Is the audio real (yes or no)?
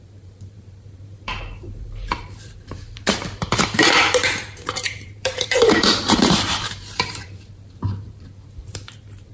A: no